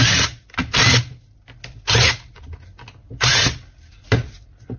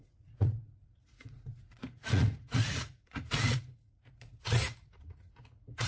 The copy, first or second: second